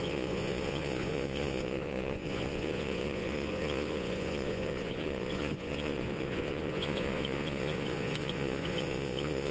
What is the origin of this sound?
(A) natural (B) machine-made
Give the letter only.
B